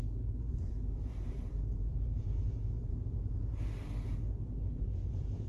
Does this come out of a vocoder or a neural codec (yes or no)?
yes